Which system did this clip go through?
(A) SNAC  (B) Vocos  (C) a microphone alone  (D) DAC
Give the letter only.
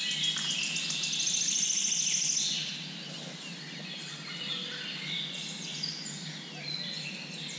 C